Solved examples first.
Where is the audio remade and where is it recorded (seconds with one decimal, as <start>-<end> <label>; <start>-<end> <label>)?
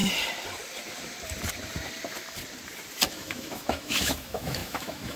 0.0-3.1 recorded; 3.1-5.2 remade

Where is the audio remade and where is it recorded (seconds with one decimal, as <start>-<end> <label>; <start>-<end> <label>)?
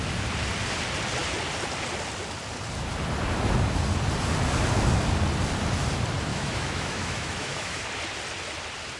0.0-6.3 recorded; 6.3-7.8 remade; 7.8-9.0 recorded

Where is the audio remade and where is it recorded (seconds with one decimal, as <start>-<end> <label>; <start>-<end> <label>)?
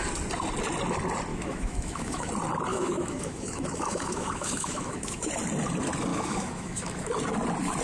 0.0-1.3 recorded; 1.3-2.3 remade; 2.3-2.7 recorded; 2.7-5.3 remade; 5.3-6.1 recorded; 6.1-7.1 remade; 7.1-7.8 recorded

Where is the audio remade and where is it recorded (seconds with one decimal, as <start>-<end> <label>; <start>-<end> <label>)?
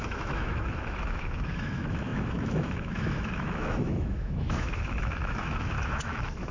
0.0-6.5 remade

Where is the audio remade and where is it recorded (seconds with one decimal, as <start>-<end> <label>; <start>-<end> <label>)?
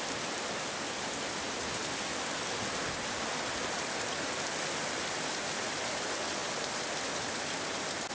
0.0-8.1 recorded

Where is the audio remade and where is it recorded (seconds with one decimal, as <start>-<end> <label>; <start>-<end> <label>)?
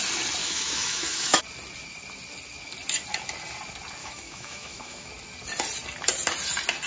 0.0-0.4 recorded; 0.4-1.4 remade; 1.4-4.0 recorded; 4.0-5.1 remade; 5.1-6.9 recorded